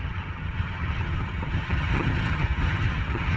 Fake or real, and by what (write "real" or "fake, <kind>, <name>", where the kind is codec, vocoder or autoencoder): fake, vocoder, HiFi-GAN